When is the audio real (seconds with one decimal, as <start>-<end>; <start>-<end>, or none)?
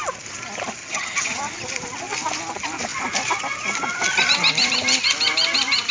0.0-0.8; 1.4-5.9